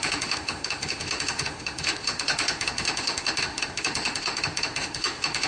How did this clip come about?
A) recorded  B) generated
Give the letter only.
B